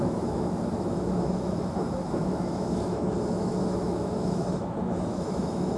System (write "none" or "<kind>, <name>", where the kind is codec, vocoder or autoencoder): autoencoder, DAC-VAE